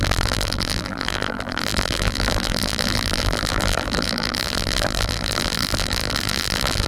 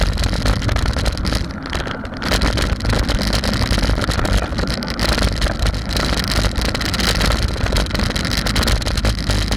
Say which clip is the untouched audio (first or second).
second